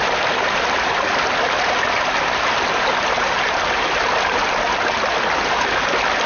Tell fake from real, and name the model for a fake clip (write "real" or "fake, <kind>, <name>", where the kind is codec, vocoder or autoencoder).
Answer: real